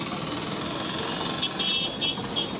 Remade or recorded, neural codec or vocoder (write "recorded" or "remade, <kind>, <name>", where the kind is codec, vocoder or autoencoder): recorded